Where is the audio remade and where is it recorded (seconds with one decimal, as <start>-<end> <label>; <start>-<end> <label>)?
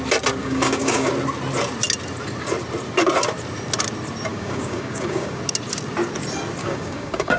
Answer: 0.0-0.4 recorded; 0.4-1.1 remade; 1.1-4.3 recorded; 4.3-5.4 remade; 5.4-6.6 recorded; 6.6-7.4 remade